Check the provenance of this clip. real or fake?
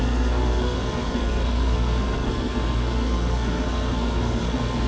fake